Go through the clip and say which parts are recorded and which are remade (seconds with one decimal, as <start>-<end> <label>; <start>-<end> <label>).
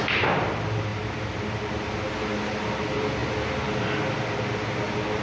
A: 0.0-5.2 recorded